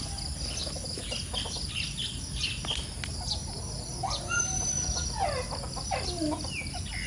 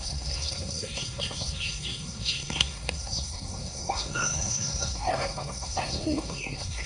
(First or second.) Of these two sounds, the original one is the first